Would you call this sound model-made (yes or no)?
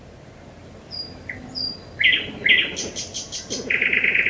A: no